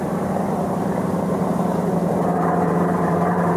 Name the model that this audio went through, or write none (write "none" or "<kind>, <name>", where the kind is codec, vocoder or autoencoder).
vocoder, BigVGAN v2